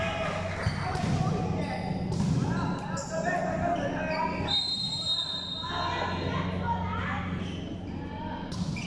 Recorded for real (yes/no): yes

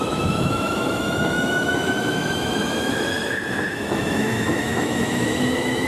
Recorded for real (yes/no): no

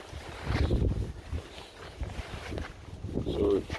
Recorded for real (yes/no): yes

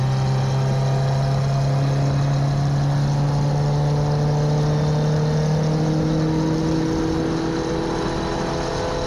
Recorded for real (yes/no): yes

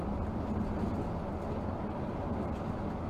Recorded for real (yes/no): yes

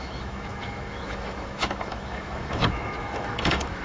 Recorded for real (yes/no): no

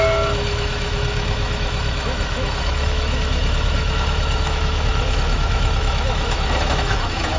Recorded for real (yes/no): no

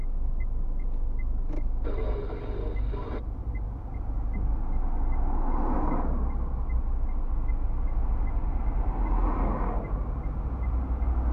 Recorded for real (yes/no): yes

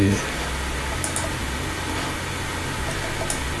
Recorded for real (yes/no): yes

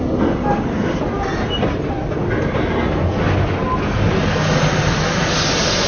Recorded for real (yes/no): yes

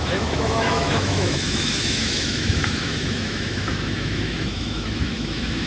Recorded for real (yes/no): no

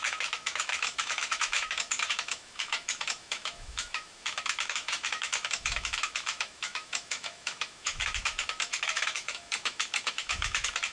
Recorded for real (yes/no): no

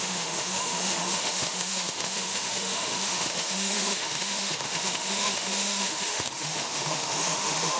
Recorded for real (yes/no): no